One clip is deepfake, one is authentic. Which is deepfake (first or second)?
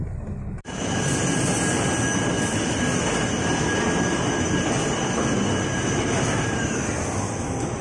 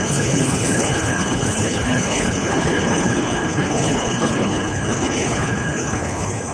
second